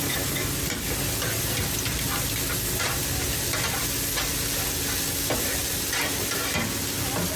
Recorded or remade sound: recorded